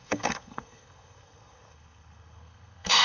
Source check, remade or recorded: remade